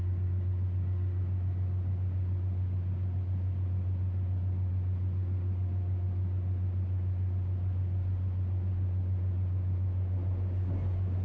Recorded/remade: recorded